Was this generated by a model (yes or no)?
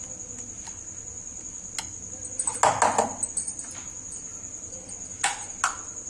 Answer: no